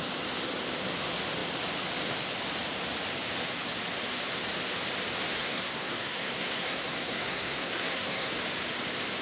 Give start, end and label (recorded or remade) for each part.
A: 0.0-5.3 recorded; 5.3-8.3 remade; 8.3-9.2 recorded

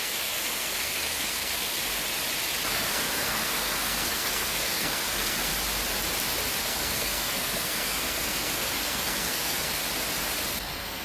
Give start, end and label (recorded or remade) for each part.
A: 0.0-1.9 remade; 1.9-2.7 recorded; 2.7-5.5 remade; 5.5-6.6 recorded; 6.6-9.8 remade; 9.8-10.5 recorded; 10.5-11.0 remade

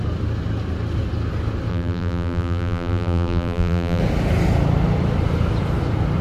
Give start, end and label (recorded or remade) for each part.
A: 0.0-1.7 recorded; 1.7-4.0 remade; 4.0-6.2 recorded